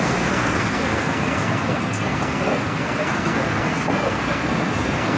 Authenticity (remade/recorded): remade